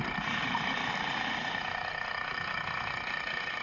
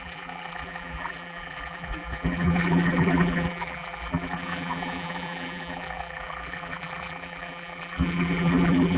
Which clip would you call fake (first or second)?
second